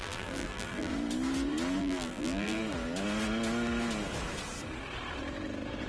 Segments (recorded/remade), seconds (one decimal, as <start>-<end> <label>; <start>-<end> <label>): 0.0-0.9 remade; 0.9-1.8 recorded; 1.8-2.6 remade; 2.6-5.9 recorded